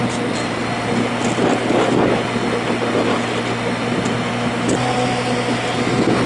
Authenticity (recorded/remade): recorded